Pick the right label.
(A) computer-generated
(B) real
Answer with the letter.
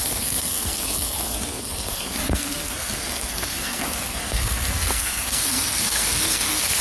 A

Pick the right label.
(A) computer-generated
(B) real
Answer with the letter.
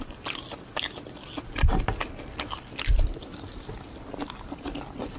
B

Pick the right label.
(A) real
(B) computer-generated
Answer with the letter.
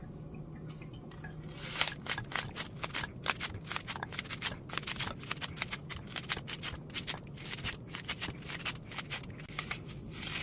A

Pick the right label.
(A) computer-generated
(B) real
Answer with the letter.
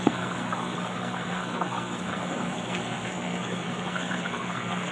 A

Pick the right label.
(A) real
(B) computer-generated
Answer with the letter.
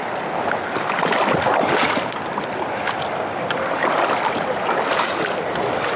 A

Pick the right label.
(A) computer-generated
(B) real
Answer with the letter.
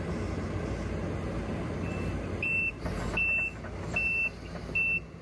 B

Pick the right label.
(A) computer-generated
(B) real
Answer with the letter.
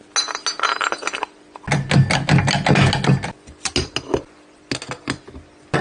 B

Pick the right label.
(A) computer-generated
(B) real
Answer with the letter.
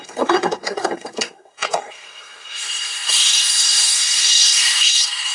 A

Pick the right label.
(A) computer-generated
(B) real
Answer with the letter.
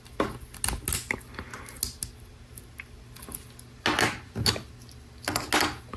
B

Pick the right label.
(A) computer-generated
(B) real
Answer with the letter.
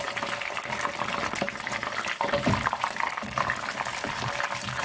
B